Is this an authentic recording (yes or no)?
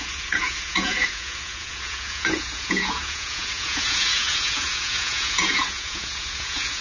no